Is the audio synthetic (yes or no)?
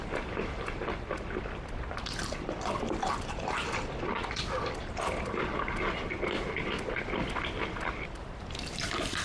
no